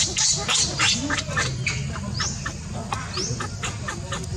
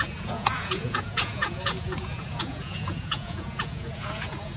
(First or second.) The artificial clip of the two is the second